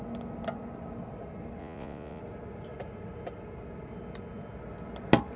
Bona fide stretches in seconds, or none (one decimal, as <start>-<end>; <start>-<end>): 0.0-1.6; 2.2-5.4